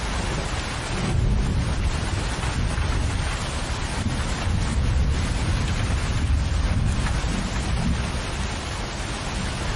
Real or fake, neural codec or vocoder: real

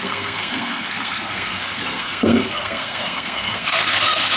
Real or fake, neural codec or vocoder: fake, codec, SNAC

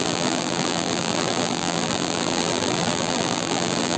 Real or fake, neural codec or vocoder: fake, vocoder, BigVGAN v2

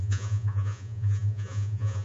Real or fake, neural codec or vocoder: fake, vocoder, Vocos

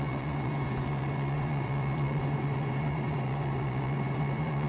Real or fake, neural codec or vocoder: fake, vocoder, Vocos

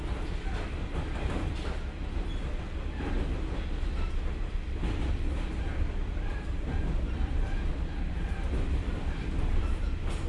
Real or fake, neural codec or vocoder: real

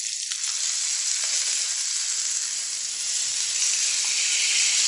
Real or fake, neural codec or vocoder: real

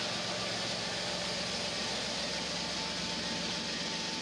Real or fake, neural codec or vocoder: real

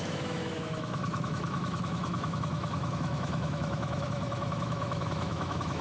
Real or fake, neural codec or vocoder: fake, autoencoder, DAC-VAE